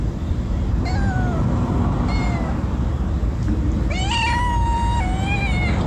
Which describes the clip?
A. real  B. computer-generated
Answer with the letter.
A